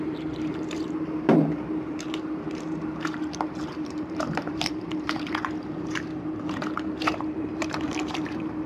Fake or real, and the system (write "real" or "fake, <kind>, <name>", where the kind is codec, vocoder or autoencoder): fake, vocoder, BigVGAN v2